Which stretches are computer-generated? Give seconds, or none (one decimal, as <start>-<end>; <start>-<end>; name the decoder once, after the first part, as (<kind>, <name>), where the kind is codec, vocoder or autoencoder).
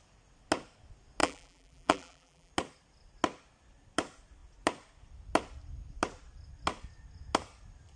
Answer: 1.2-2.5 (vocoder, BigVGAN v2)